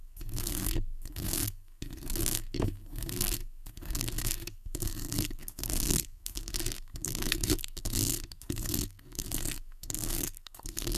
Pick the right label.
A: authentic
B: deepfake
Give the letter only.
B